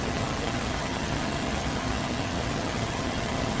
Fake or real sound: fake